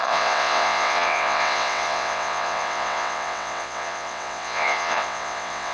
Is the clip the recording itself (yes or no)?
no